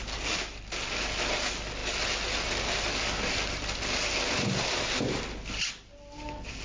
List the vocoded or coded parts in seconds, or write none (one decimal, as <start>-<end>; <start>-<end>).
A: none